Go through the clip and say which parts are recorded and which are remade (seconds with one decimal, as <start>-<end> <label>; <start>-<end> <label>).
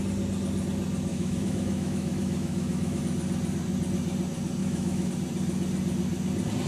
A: 0.0-1.1 recorded; 1.1-3.0 remade; 3.0-4.6 recorded; 4.6-5.1 remade; 5.1-6.7 recorded